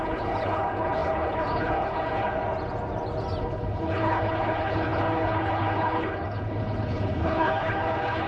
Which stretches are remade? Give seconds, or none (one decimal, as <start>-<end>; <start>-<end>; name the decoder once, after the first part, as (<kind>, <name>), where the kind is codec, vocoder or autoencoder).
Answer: 0.0-2.4 (codec, HILCodec); 3.4-8.3

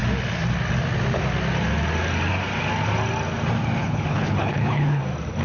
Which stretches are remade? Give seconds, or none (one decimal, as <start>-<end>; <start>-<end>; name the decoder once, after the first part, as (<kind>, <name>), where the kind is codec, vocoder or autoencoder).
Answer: 3.8-5.0 (codec, HILCodec)

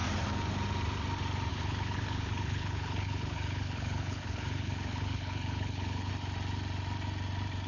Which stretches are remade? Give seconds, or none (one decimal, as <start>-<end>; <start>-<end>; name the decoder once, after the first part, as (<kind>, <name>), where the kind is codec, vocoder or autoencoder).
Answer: 1.5-6.1 (codec, HILCodec)